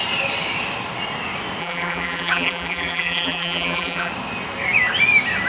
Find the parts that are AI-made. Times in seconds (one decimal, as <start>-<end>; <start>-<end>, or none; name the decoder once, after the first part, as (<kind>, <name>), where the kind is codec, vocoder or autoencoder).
1.6-4.1 (vocoder, BigVGAN v2)